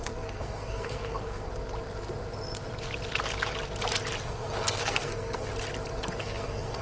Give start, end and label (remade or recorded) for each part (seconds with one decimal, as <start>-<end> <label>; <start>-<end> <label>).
0.0-1.5 remade; 1.5-4.2 recorded; 4.2-5.5 remade; 5.5-6.2 recorded; 6.2-6.8 remade